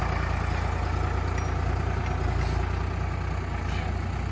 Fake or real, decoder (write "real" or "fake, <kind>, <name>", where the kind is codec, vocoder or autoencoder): real